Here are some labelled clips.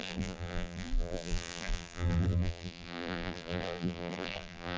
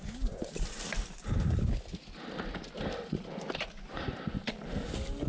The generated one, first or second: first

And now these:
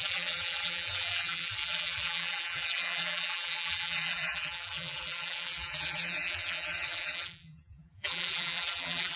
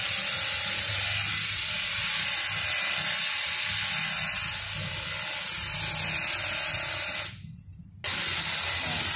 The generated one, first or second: first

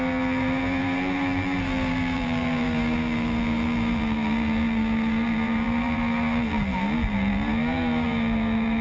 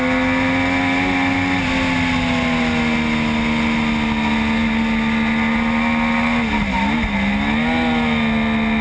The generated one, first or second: first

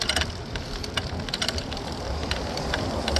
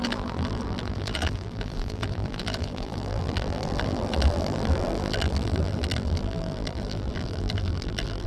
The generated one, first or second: second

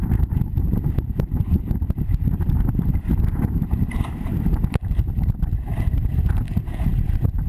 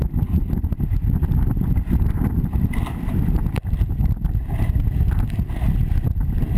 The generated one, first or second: first